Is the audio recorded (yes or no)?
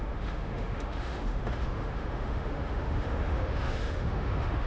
no